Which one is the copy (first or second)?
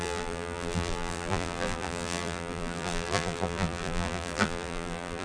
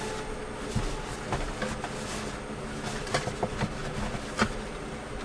first